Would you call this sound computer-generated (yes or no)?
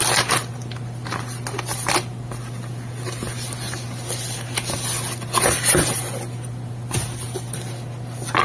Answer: no